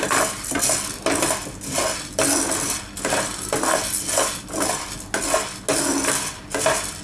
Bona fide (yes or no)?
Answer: yes